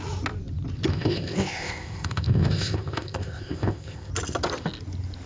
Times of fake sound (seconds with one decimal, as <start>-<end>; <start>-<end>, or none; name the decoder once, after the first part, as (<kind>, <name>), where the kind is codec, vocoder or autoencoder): 0.9-4.1 (codec, ZipCodec)